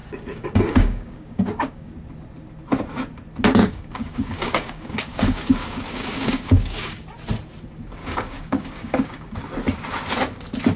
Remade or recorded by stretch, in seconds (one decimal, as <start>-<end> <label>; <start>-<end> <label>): 0.0-1.9 remade; 1.9-3.5 recorded; 3.5-7.1 remade; 7.1-8.0 recorded; 8.0-9.4 remade; 9.4-10.8 recorded